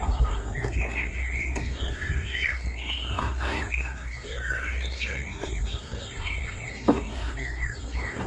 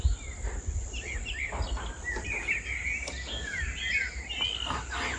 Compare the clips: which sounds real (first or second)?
second